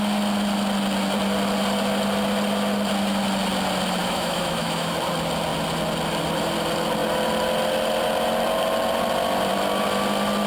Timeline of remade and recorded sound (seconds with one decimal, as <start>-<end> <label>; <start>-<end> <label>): 0.0-4.0 recorded; 4.0-4.9 remade; 4.9-10.5 recorded